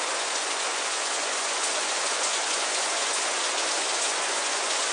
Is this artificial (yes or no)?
yes